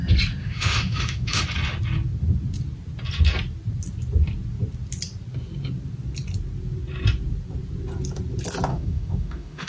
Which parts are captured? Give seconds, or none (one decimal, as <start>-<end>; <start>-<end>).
0.0-0.4; 1.4-8.7